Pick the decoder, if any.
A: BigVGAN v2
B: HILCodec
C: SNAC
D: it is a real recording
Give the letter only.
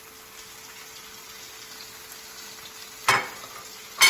D